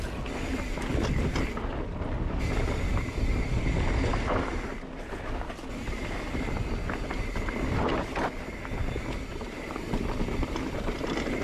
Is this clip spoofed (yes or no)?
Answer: no